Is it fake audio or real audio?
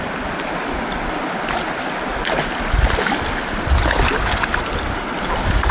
real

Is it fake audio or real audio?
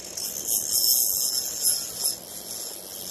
real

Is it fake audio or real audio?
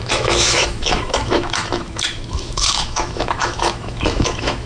fake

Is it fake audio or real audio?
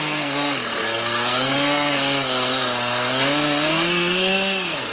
fake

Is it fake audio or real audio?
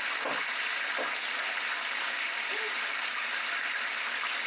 real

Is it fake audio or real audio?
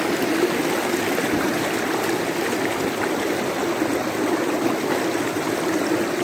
real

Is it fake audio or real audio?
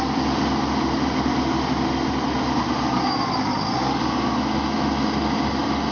real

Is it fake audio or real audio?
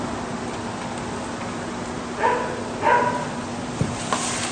real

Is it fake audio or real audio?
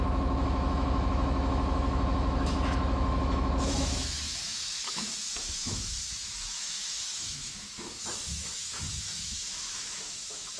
fake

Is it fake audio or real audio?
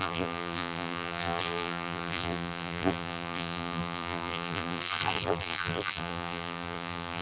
fake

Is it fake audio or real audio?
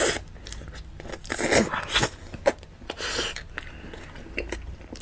real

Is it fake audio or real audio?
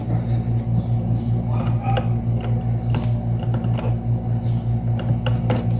real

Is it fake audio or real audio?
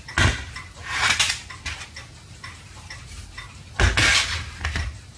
real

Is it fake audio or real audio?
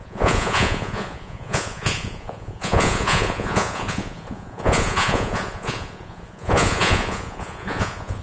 fake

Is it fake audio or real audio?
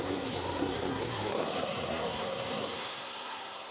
fake